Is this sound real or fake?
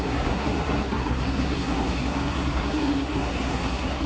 fake